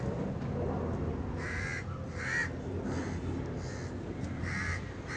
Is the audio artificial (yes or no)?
no